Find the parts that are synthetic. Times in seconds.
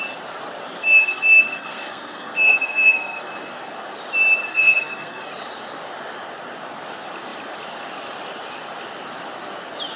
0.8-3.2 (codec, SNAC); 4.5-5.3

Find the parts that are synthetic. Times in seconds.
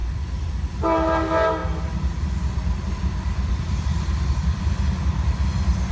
0.0-0.7 (vocoder, BigVGAN v2); 1.6-4.6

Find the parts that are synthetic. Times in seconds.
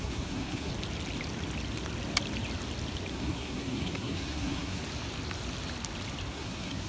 0.0-0.7 (codec, SNAC); 3.1-4.8; 6.3-6.9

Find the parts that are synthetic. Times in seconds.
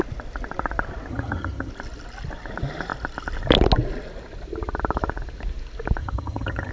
1.1-1.7 (vocoder, HiFi-GAN); 6.0-6.7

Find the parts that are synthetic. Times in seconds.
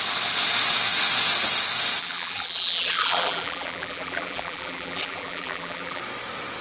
2.0-6.0 (vocoder, BigVGAN v2)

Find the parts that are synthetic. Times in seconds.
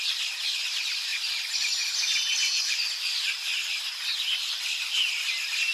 none